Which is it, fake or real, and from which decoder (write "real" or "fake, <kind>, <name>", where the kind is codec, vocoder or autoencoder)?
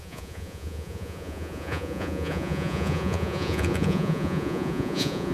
fake, vocoder, Vocos